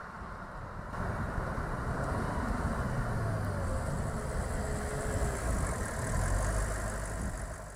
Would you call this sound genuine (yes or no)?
yes